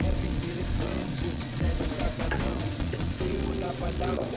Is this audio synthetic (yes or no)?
yes